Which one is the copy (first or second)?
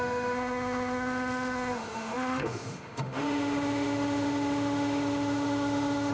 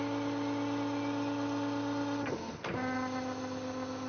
first